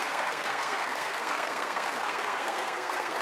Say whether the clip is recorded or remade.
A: remade